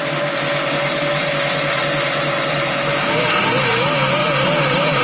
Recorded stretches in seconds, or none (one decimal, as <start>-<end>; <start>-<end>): 0.0-4.2